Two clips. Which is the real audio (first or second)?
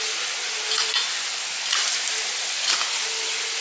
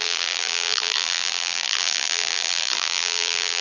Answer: first